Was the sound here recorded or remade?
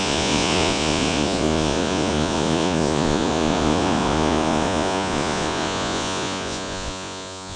remade